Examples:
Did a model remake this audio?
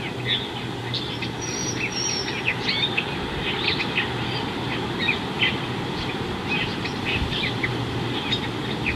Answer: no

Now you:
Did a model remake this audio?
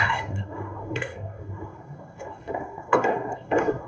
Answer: yes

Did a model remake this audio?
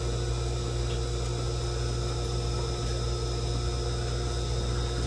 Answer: no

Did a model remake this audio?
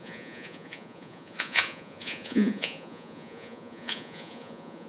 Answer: yes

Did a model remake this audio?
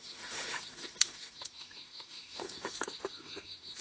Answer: yes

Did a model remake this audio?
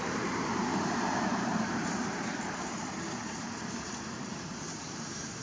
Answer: yes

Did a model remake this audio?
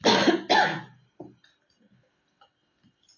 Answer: no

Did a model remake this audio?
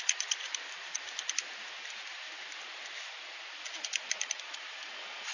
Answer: no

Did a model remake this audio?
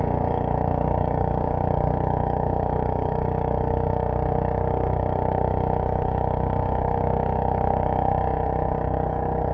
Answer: yes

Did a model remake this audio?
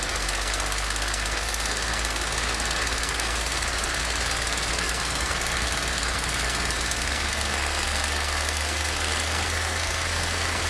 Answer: yes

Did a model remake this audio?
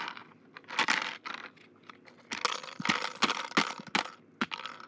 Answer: no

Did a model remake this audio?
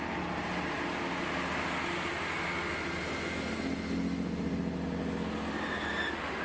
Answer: no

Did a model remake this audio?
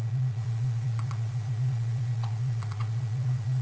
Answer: yes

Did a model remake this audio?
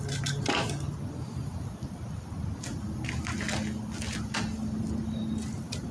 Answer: no